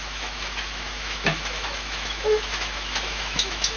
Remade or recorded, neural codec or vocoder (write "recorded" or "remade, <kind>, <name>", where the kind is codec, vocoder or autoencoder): remade, autoencoder, DAC-VAE